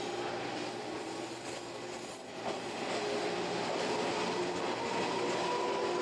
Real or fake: real